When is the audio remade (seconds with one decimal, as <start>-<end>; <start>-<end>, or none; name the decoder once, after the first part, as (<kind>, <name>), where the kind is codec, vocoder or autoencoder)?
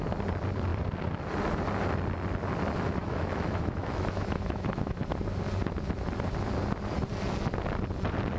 3.0-5.0 (autoencoder, DAC-VAE)